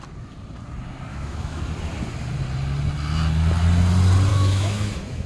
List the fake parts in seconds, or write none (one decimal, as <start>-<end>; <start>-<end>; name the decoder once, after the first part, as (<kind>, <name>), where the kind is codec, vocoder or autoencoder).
1.1-1.6 (autoencoder, DAC-VAE); 4.3-5.3